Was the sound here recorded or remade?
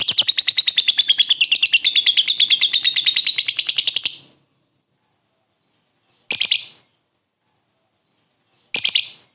recorded